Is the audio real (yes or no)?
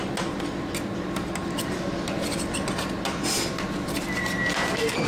yes